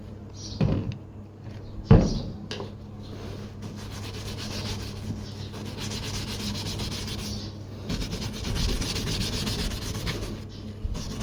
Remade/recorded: recorded